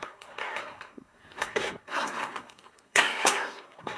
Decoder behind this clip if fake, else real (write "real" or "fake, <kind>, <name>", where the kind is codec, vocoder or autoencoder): fake, codec, SNAC